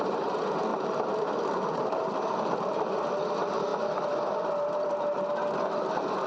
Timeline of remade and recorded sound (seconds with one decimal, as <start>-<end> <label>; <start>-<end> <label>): 0.0-0.7 recorded; 0.7-3.1 remade; 3.1-6.3 recorded